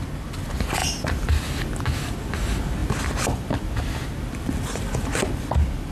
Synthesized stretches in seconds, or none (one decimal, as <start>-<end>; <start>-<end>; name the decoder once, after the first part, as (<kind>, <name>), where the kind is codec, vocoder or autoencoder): none